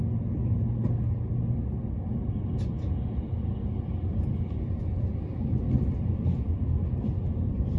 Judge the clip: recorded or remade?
recorded